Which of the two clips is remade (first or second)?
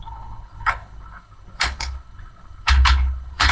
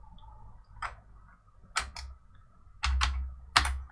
first